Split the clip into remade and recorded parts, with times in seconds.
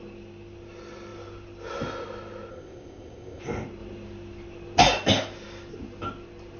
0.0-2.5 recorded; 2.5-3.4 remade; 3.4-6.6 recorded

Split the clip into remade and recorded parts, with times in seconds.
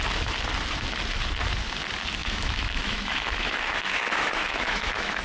0.0-2.2 recorded; 2.2-5.2 remade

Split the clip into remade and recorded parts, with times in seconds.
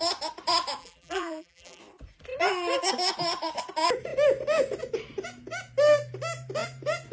0.0-0.8 recorded; 0.8-1.8 remade; 1.8-7.1 recorded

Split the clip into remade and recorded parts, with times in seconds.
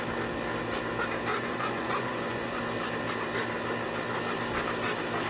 0.0-1.3 recorded; 1.3-2.6 remade; 2.6-5.3 recorded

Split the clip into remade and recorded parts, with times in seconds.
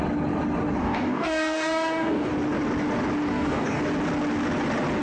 0.0-0.8 recorded; 0.8-2.3 remade; 2.3-3.3 recorded; 3.3-3.8 remade; 3.8-5.0 recorded